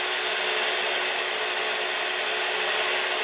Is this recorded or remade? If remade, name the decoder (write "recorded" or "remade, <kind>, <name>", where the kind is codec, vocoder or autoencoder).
recorded